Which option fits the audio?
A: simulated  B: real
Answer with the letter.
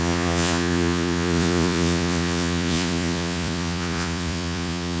A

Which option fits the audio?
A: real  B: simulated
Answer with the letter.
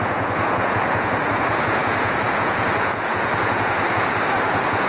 B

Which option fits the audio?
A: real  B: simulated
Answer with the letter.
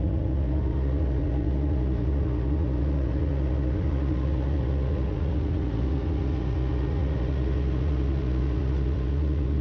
B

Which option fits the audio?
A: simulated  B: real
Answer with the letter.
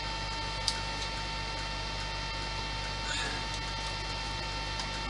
B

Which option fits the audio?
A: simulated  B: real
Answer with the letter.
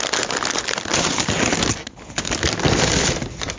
B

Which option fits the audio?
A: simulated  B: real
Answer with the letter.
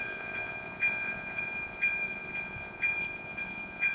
A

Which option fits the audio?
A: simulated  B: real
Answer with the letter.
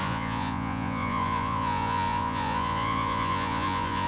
A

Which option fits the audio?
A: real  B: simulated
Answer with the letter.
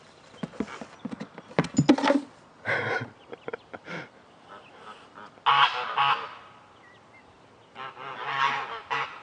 A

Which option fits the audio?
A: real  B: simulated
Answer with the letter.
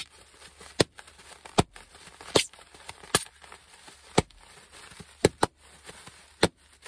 A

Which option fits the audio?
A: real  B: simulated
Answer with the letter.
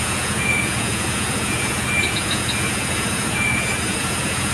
B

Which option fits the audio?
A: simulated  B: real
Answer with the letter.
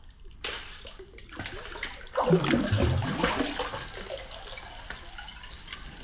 B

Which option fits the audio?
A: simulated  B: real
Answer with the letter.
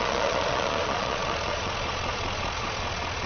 A